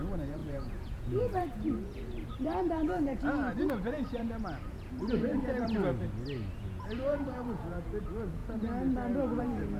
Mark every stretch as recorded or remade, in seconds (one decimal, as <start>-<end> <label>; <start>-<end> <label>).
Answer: 0.0-5.3 remade; 5.3-6.6 recorded; 6.6-8.4 remade; 8.4-9.4 recorded; 9.4-9.8 remade